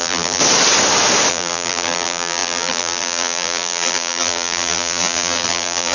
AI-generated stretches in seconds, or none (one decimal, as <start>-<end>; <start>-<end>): 0.0-0.4; 1.3-5.9